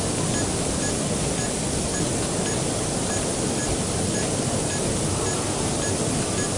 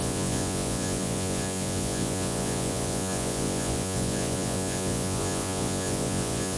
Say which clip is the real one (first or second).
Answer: first